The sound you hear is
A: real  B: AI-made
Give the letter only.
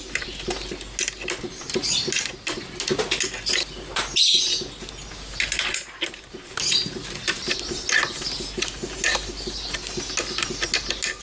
A